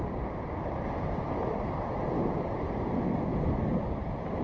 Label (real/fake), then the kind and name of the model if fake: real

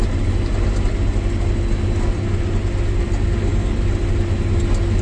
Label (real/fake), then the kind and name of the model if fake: real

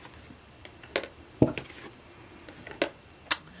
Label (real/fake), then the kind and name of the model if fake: real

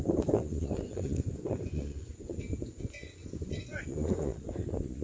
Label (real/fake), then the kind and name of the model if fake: fake, vocoder, Vocos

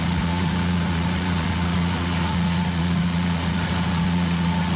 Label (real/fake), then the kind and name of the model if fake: fake, vocoder, Vocos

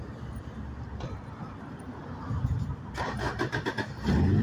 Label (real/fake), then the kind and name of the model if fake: real